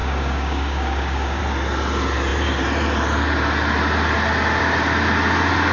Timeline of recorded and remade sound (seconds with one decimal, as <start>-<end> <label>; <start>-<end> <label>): 0.0-1.4 remade; 1.4-5.7 recorded